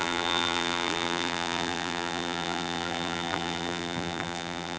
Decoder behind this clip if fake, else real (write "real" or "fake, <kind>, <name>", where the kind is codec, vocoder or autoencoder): fake, vocoder, BigVGAN v2